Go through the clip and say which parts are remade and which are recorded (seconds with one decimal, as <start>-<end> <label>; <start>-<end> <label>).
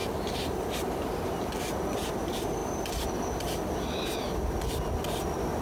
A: 0.0-5.6 recorded